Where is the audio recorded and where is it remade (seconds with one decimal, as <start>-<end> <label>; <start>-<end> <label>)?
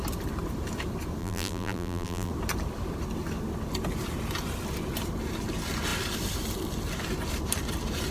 0.0-1.2 recorded; 1.2-2.3 remade; 2.3-8.1 recorded